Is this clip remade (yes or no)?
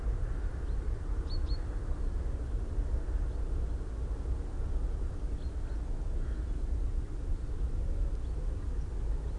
no